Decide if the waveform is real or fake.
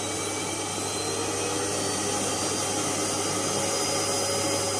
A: real